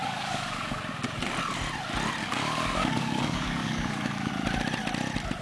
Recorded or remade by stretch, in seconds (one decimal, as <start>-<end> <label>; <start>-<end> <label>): 0.0-0.8 remade; 0.8-2.2 recorded; 2.2-4.3 remade; 4.3-5.4 recorded